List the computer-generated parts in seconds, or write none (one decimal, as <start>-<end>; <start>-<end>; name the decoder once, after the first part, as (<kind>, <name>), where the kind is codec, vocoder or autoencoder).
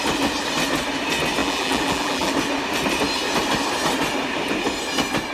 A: 1.4-2.3 (vocoder, BigVGAN v2)